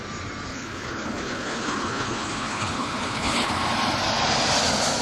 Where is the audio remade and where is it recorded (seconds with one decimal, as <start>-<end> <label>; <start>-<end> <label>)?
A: 0.0-0.5 recorded; 0.5-3.5 remade; 3.5-5.0 recorded